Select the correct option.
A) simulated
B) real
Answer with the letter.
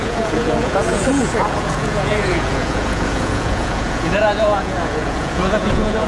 A